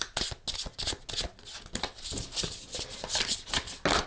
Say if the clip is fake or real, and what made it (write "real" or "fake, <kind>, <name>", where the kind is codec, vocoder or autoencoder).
real